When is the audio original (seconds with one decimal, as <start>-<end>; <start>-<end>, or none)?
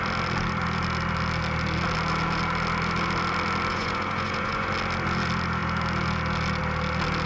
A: 0.0-3.7; 4.7-7.3